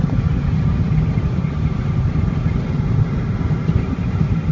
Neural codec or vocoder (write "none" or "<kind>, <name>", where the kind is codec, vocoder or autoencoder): vocoder, BigVGAN v2